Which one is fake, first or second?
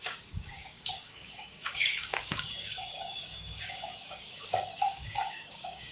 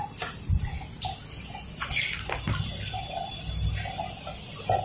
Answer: first